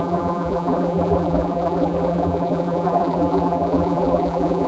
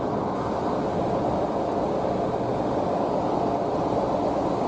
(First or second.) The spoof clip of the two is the first